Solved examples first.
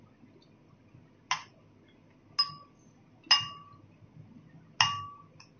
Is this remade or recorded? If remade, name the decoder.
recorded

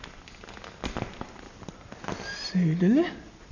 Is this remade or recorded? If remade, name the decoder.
recorded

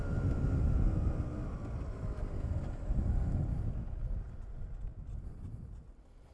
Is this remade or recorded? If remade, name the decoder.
recorded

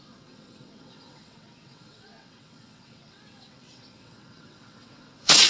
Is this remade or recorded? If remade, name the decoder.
remade, vocoder, WaveNeXt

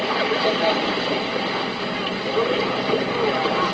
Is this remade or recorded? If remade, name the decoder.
recorded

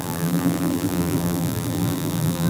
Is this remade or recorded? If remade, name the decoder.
remade, vocoder, BigVGAN v2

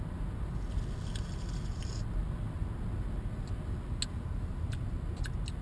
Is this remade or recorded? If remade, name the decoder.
recorded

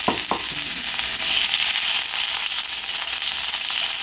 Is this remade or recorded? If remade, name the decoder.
recorded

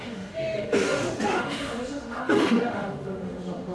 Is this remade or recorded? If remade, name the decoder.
remade, autoencoder, DAC-VAE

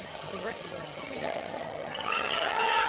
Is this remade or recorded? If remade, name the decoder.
remade, vocoder, HiFi-GAN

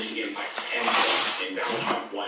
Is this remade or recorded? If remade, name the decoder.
recorded